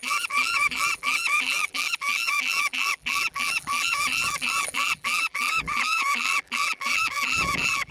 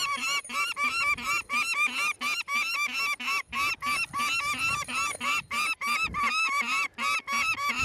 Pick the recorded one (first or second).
second